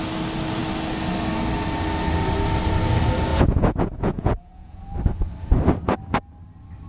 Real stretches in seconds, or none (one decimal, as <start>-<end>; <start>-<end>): 0.0-3.3; 4.8-6.9